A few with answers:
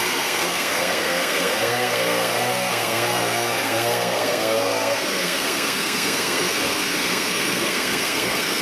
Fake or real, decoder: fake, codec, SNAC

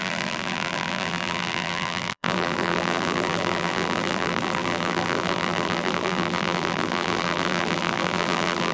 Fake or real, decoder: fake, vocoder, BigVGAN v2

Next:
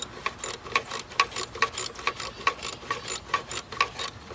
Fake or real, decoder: real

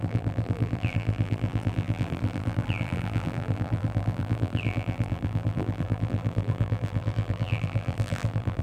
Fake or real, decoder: fake, vocoder, BigVGAN v2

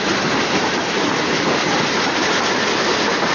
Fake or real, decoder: real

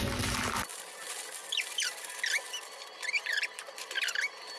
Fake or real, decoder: real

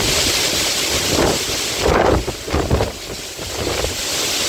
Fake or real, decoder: real